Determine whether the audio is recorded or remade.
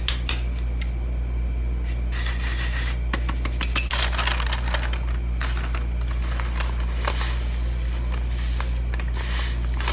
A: recorded